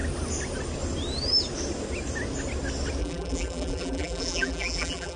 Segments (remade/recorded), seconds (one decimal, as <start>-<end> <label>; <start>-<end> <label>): 0.0-3.0 recorded; 3.0-5.2 remade